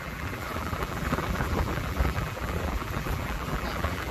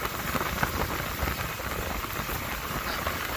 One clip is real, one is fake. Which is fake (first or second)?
first